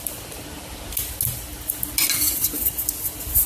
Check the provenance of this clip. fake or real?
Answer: real